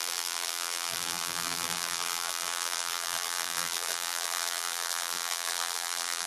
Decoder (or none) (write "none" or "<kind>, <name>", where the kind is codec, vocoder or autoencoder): vocoder, BigVGAN v2